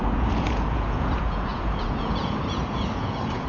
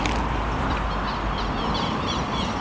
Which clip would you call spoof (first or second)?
first